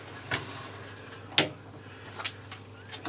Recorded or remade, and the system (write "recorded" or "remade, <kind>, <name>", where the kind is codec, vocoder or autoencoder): recorded